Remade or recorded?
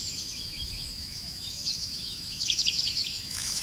remade